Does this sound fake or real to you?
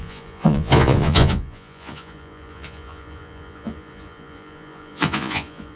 fake